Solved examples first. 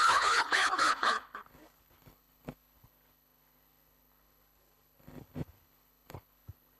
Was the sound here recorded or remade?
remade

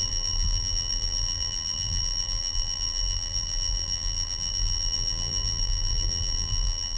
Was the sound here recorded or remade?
remade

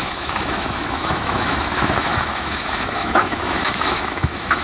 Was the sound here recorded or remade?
remade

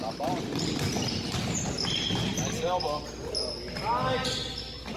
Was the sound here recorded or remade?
recorded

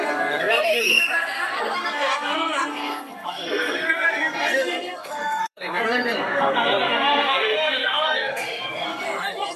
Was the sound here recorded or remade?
remade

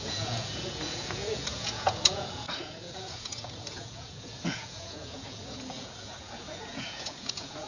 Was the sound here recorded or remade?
remade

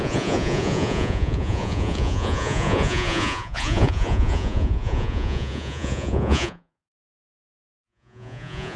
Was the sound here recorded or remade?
remade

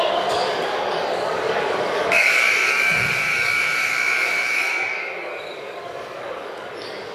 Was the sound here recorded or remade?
remade